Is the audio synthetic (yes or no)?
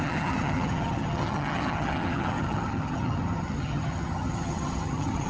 yes